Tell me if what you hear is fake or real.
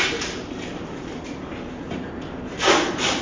real